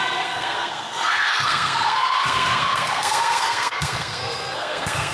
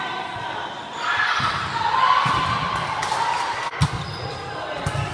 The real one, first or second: second